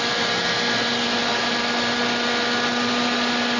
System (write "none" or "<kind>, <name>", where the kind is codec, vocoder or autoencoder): none